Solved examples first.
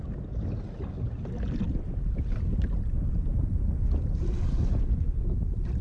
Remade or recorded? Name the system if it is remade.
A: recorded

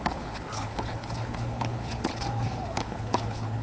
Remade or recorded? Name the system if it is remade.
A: remade, codec, HILCodec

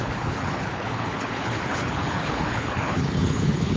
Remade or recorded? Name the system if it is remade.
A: remade, codec, HILCodec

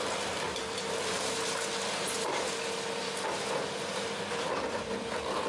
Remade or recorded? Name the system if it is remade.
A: recorded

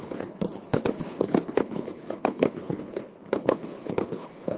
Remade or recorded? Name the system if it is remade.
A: remade, codec, HILCodec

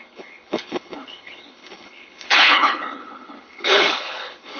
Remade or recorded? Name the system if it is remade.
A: remade, codec, HILCodec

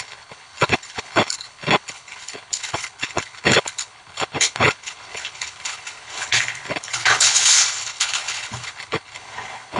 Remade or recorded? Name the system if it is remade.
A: remade, codec, HILCodec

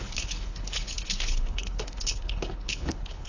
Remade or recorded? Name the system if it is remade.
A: remade, codec, HILCodec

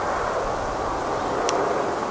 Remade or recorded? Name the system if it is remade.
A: recorded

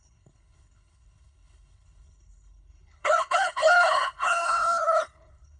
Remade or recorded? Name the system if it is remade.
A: remade, codec, HILCodec